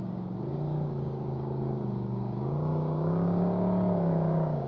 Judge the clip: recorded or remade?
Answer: remade